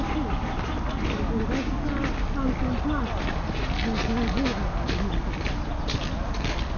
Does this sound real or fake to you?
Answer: real